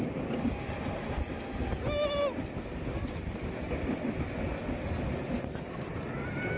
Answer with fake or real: real